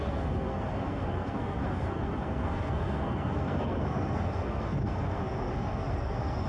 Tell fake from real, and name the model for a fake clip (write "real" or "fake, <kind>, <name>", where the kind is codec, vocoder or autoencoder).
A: fake, codec, SNAC